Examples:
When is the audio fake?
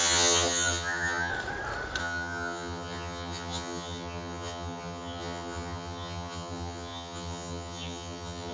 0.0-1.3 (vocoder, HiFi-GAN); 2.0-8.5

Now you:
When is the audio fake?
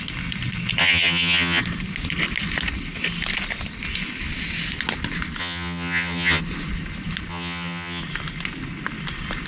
0.8-1.6 (vocoder, HiFi-GAN); 5.4-6.4; 7.3-8.0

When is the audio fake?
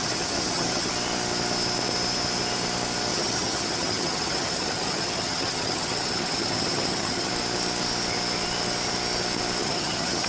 0.0-0.9 (vocoder, HiFi-GAN); 3.1-7.3; 9.6-10.3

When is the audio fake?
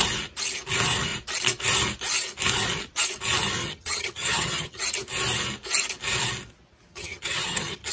3.6-4.8 (vocoder, HiFi-GAN); 6.9-7.9